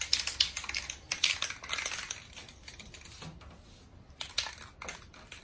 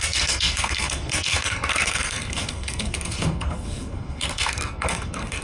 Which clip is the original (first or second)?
first